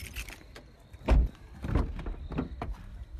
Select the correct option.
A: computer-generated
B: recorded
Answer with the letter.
B